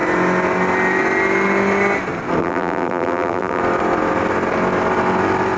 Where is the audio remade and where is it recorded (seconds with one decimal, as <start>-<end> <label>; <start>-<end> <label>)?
0.0-2.4 recorded; 2.4-3.6 remade; 3.6-5.6 recorded